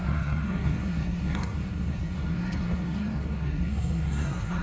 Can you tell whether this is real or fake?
fake